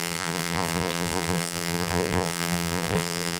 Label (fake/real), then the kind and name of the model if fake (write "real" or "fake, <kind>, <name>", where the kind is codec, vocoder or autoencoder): fake, vocoder, BigVGAN v2